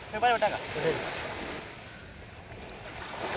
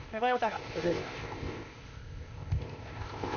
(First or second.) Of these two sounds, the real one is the first